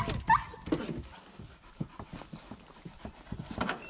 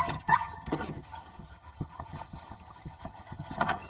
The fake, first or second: second